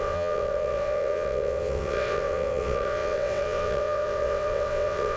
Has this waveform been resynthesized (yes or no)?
yes